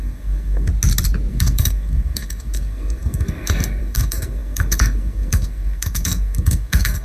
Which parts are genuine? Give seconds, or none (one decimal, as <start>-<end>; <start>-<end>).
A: 0.7-1.3